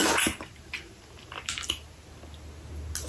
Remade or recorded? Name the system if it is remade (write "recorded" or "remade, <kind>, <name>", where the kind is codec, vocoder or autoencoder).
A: recorded